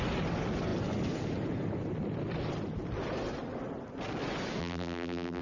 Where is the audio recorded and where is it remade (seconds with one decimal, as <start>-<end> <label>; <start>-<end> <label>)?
0.0-4.6 recorded; 4.6-5.4 remade